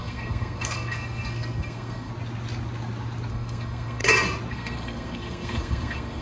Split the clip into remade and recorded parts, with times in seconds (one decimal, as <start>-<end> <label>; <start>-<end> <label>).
0.0-2.1 remade; 2.1-3.3 recorded; 3.3-4.0 remade; 4.0-4.5 recorded; 4.5-6.2 remade